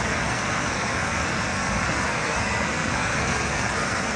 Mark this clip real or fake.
fake